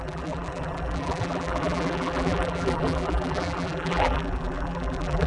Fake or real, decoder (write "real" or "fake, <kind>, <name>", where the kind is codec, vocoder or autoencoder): fake, vocoder, BigVGAN v2